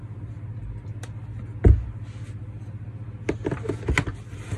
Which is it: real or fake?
real